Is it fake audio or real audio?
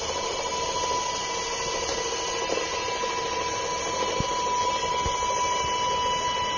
real